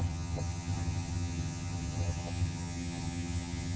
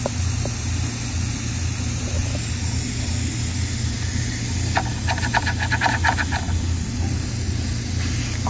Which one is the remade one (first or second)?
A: first